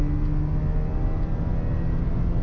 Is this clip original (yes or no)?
yes